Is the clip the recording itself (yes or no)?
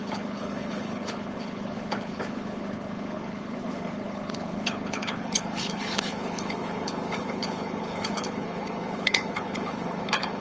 no